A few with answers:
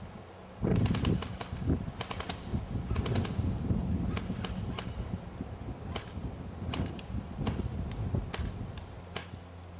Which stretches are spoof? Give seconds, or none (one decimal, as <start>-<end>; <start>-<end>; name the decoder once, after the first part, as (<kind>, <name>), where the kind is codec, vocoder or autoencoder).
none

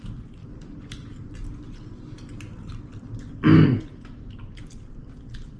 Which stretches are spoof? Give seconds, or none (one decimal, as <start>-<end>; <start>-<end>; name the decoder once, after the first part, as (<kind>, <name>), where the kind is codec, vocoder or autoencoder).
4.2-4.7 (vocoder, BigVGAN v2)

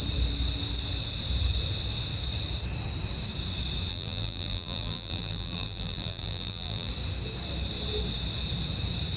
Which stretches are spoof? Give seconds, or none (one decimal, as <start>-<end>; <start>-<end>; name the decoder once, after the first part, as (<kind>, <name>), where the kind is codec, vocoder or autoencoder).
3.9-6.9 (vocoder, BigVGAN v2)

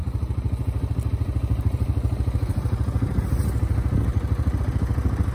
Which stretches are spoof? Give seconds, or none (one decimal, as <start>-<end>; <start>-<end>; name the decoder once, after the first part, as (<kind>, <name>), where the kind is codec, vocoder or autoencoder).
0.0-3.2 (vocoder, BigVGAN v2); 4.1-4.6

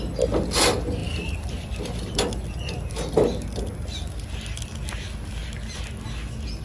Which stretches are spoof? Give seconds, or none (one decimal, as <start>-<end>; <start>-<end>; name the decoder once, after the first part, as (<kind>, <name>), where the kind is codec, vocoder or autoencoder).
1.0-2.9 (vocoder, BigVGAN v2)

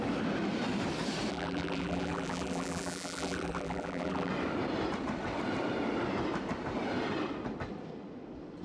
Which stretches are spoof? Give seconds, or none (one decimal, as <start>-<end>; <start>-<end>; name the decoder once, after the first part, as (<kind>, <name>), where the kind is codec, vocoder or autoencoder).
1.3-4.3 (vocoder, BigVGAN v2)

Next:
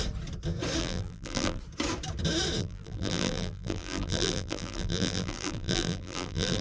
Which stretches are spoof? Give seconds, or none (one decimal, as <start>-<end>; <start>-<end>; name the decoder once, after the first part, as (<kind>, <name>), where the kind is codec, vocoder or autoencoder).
0.8-1.6 (vocoder, BigVGAN v2); 2.6-6.6

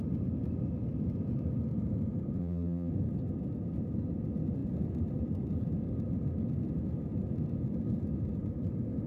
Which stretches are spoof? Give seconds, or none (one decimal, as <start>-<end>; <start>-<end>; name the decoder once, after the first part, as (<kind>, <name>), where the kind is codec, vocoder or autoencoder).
2.4-2.9 (vocoder, BigVGAN v2)